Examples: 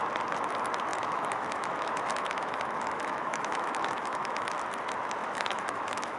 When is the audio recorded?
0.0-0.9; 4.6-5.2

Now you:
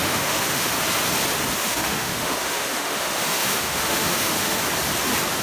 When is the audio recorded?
0.7-1.6; 4.6-5.4